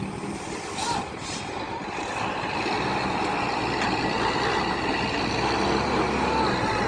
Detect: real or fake real